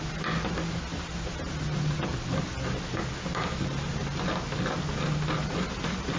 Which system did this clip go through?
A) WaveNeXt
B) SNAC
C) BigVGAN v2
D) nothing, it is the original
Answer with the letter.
D